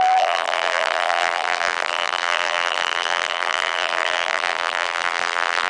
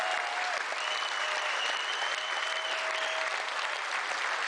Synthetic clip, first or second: first